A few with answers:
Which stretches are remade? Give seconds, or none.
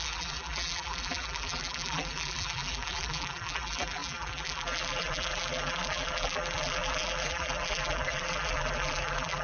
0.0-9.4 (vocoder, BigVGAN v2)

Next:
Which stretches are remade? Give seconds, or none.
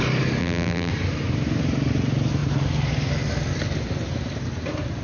0.4-0.9 (vocoder, BigVGAN v2)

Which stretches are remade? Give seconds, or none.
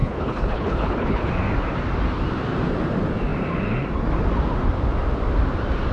0.0-1.3 (codec, HILCodec)